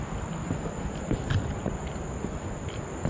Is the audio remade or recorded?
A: recorded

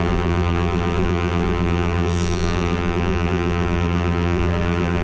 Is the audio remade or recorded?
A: remade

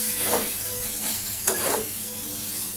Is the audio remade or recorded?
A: remade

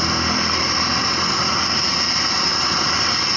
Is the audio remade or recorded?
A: recorded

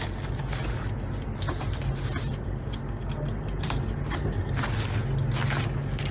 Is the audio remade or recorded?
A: recorded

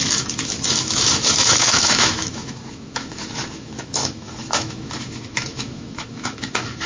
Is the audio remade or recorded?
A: remade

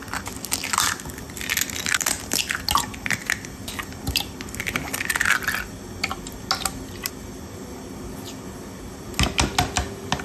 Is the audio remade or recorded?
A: recorded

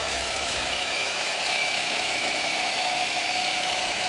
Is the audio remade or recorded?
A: remade